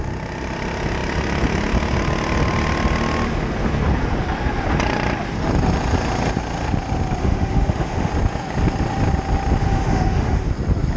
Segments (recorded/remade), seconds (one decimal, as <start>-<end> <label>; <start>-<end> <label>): 0.0-7.2 recorded; 7.2-8.1 remade; 8.1-9.6 recorded; 9.6-10.5 remade; 10.5-11.0 recorded